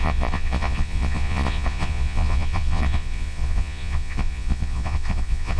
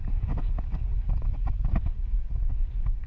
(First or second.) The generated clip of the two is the first